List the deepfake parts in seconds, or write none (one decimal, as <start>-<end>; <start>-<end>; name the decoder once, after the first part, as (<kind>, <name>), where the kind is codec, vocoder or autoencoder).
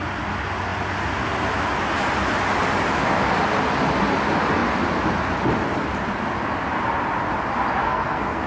7.8-8.5 (codec, SNAC)